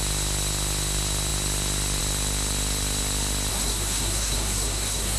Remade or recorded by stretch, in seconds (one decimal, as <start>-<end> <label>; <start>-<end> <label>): 0.0-3.5 recorded; 3.5-5.2 remade